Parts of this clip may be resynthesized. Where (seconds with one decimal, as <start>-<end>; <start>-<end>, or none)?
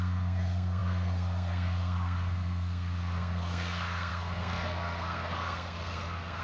0.0-6.4